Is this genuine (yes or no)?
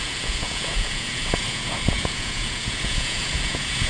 no